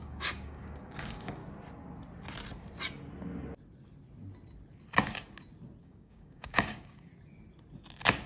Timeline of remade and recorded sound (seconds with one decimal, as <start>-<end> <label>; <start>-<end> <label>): 0.0-1.4 remade; 1.4-5.8 recorded; 5.8-7.1 remade; 7.1-8.3 recorded